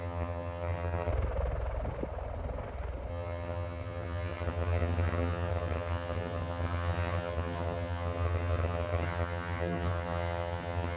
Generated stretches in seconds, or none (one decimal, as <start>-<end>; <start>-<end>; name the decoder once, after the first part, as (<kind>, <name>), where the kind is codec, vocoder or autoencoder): 0.0-1.1 (vocoder, HiFi-GAN); 3.1-11.0